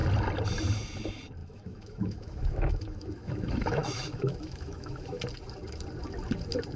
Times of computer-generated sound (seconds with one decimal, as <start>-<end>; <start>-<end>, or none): 1.4-5.2